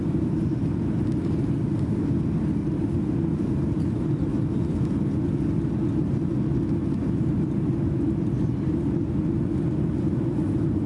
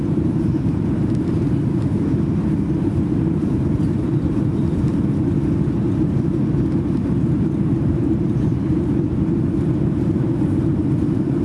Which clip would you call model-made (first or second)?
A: second